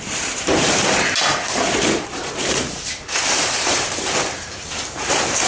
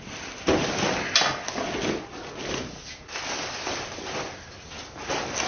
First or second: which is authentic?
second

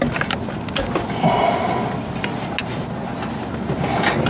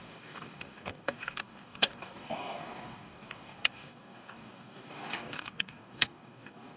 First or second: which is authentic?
first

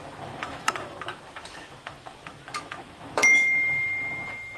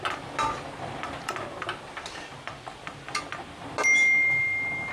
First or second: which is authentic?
second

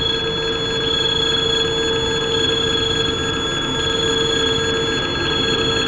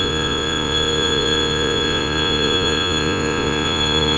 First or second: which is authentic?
first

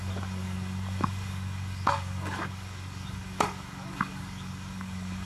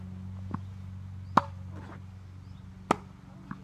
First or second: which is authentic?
second